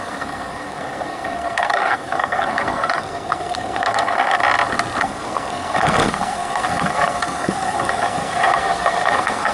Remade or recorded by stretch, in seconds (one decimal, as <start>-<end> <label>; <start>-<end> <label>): 0.0-4.4 remade; 4.4-5.0 recorded; 5.0-9.5 remade